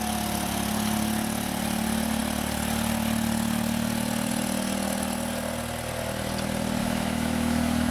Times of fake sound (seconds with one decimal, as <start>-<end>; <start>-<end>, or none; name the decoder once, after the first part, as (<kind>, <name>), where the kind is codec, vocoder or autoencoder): 6.8-7.9 (autoencoder, DAC-VAE)